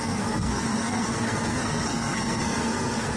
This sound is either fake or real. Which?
fake